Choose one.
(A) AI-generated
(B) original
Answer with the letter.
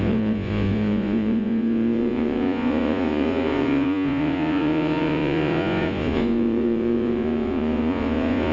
A